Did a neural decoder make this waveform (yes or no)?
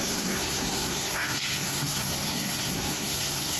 yes